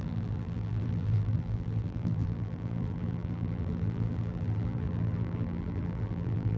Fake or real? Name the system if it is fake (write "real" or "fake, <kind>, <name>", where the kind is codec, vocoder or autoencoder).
fake, vocoder, BigVGAN v2